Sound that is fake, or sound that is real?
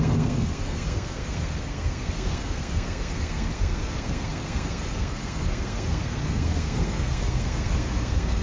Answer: fake